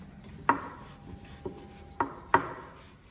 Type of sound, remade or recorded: recorded